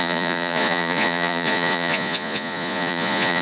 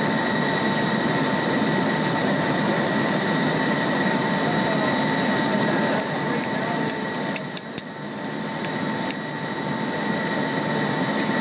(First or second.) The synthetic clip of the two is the first